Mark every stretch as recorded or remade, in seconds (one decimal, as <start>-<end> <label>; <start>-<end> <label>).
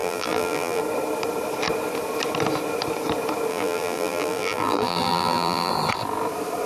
0.0-0.8 remade; 0.8-3.5 recorded; 3.5-5.7 remade; 5.7-6.7 recorded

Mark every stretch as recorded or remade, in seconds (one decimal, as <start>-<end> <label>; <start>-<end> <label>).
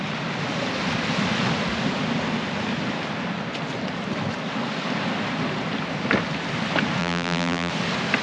0.0-7.0 recorded; 7.0-7.7 remade; 7.7-8.2 recorded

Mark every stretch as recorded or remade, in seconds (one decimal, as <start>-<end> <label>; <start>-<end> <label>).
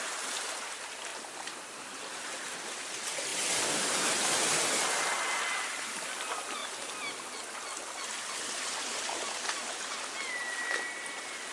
0.0-1.1 remade; 1.1-1.8 recorded; 1.8-6.6 remade; 6.6-8.7 recorded; 8.7-11.5 remade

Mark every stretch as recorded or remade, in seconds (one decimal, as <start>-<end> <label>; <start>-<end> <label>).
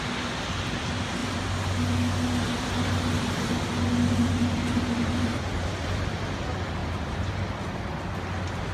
0.0-5.3 recorded; 5.3-6.1 remade; 6.1-6.8 recorded; 6.8-7.3 remade; 7.3-8.7 recorded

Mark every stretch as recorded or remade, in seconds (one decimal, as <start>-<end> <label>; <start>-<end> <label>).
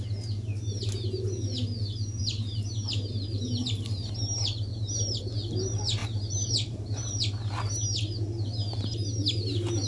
0.0-2.2 recorded; 2.2-4.1 remade; 4.1-6.0 recorded; 6.0-7.1 remade; 7.1-9.9 recorded